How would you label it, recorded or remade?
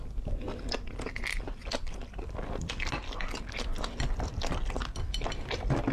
recorded